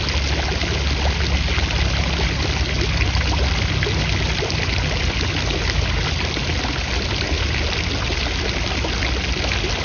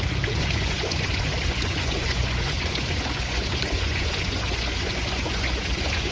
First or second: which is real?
first